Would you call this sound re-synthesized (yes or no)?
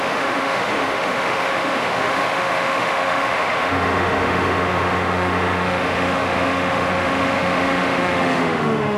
yes